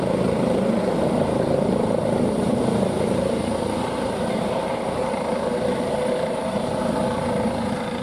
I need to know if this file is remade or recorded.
remade